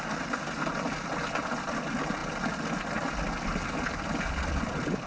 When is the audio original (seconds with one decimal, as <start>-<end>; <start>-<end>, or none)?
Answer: 0.0-5.1